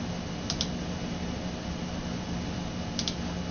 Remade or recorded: recorded